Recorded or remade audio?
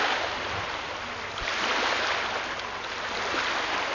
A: recorded